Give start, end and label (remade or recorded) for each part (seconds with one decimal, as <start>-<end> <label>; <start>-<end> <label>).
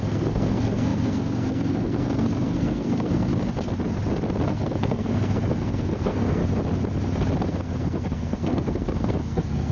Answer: 0.0-3.3 remade; 3.3-4.5 recorded; 4.5-6.4 remade; 6.4-7.5 recorded; 7.5-9.7 remade